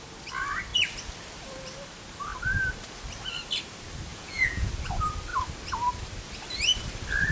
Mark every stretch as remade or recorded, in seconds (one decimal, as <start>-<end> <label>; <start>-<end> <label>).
0.0-4.1 recorded; 4.1-4.7 remade; 4.7-7.3 recorded